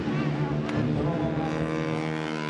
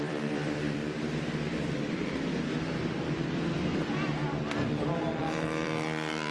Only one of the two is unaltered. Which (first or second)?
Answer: first